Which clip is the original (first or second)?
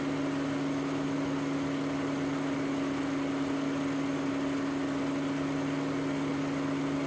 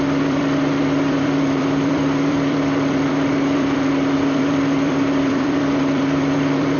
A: first